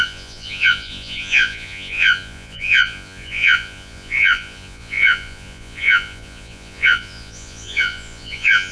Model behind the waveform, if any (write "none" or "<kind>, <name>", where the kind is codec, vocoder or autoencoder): vocoder, Vocos